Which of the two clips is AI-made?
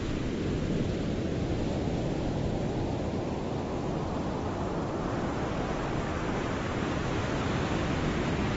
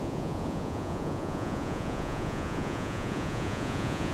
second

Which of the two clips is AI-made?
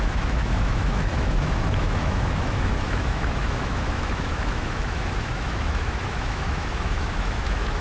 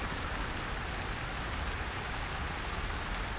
first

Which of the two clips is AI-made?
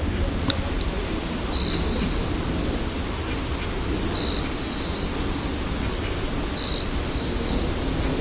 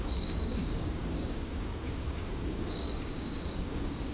second